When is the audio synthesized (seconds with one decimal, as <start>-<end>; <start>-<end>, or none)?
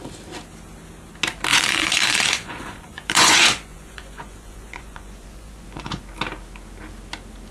1.5-6.0